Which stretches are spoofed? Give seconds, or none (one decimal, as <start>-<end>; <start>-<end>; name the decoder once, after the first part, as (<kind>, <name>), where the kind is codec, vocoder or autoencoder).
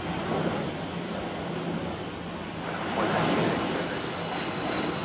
none